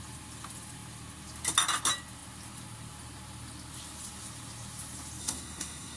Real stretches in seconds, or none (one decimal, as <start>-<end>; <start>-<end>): 0.0-5.2